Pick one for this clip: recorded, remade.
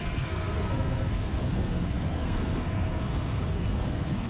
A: remade